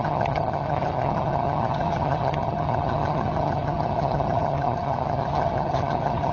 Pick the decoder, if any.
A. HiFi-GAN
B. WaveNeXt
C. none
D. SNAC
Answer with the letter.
A